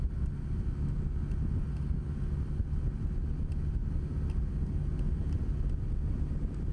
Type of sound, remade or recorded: recorded